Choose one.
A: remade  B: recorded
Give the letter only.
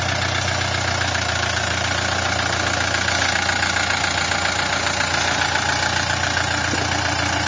B